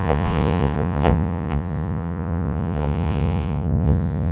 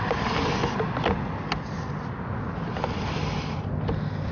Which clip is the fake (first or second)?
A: first